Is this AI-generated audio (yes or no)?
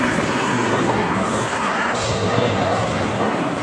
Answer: yes